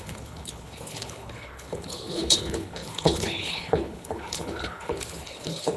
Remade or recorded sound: remade